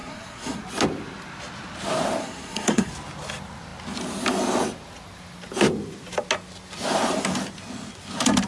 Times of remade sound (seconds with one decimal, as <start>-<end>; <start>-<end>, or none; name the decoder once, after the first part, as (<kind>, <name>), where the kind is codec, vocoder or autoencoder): 0.0-0.6 (codec, SNAC); 2.2-2.9